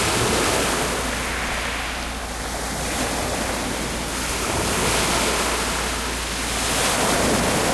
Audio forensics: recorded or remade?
recorded